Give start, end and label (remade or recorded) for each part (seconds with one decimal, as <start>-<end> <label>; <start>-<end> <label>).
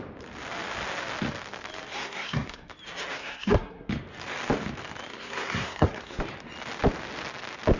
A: 0.0-1.9 recorded; 1.9-2.7 remade; 2.7-3.2 recorded; 3.2-3.9 remade; 3.9-5.1 recorded; 5.1-6.2 remade; 6.2-7.8 recorded